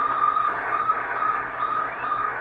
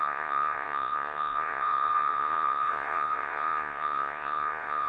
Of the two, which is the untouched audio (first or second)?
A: first